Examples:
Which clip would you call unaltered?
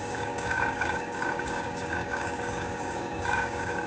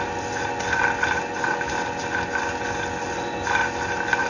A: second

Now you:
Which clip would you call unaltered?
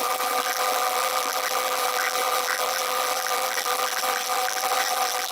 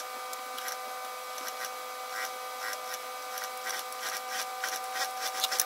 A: second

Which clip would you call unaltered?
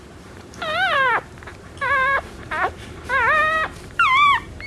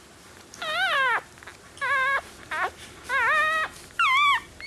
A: second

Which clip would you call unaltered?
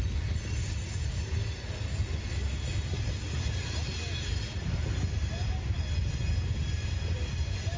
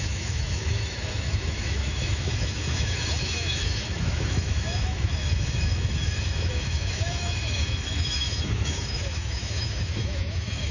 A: first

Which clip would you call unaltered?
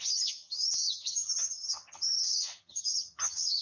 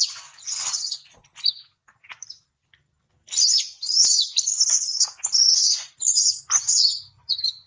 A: second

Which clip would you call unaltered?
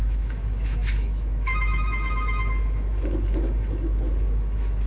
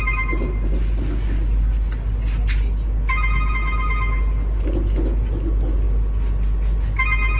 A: second